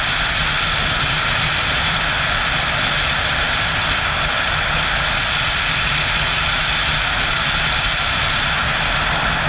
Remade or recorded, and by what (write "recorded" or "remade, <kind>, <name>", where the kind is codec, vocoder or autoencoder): recorded